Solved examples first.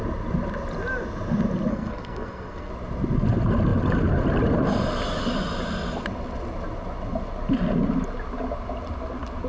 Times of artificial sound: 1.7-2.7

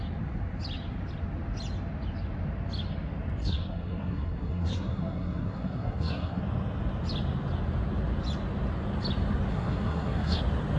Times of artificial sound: 3.4-6.4; 9.5-10.4

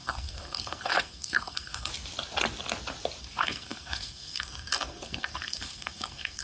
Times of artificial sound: 0.0-1.9; 3.2-6.4

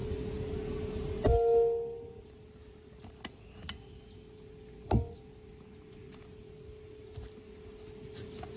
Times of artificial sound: none

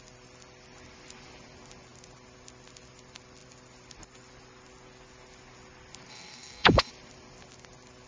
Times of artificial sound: 6.1-6.9

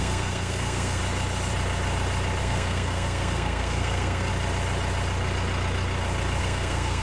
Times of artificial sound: 0.0-1.0; 2.4-4.3; 6.4-7.0

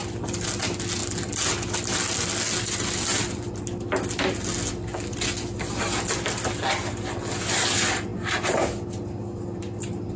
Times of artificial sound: none